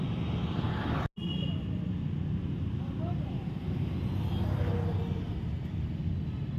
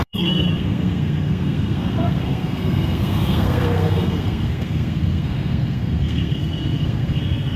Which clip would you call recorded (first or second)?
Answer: first